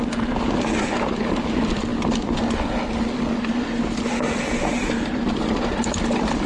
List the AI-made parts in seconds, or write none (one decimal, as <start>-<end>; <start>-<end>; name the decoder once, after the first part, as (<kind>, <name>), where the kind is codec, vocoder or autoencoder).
none